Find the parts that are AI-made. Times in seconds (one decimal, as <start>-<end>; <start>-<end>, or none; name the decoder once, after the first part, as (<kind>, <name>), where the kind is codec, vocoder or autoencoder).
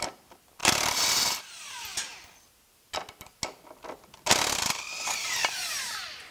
0.6-1.4 (vocoder, BigVGAN v2); 1.9-2.9